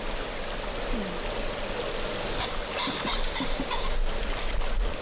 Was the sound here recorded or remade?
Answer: recorded